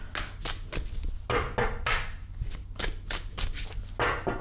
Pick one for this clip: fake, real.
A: real